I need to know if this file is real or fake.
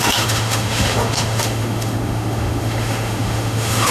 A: fake